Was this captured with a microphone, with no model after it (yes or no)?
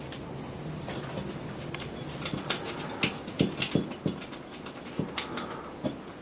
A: yes